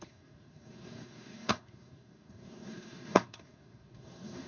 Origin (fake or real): fake